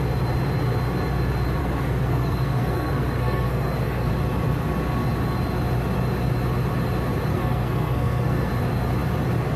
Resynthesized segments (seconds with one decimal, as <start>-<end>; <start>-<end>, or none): 1.6-4.1; 7.3-8.5